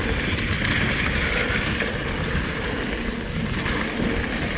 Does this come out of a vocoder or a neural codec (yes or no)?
no